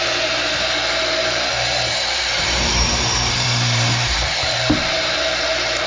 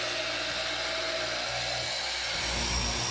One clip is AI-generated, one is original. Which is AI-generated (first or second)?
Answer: first